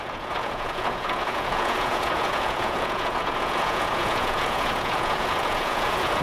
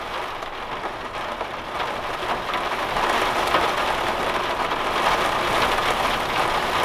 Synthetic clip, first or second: first